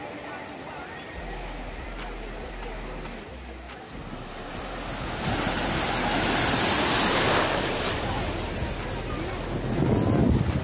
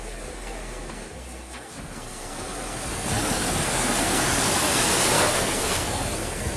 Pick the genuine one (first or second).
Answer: first